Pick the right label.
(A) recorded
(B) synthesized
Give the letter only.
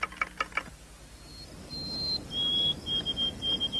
A